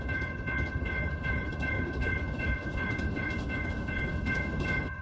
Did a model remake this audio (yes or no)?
yes